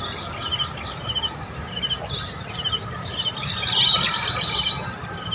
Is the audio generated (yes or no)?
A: no